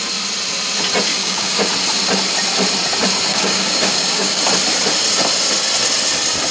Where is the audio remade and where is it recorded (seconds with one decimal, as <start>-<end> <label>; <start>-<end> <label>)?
0.0-1.1 recorded; 1.1-1.6 remade; 1.6-3.3 recorded; 3.3-4.4 remade; 4.4-6.5 recorded